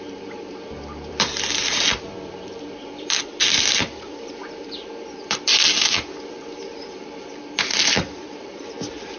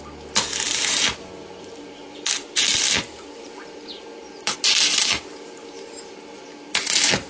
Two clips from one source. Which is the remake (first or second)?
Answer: first